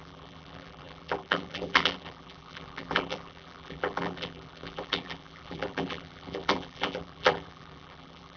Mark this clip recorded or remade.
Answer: remade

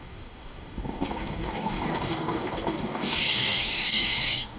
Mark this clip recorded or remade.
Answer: remade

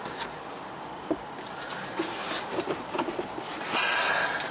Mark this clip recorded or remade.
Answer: recorded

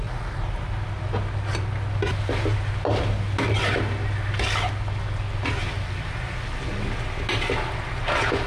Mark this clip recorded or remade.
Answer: recorded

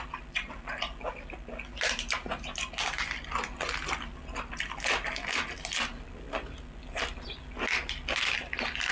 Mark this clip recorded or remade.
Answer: recorded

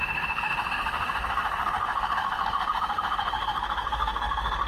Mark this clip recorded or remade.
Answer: remade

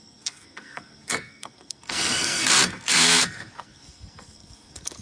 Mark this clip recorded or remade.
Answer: remade